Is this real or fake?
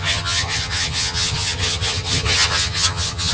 fake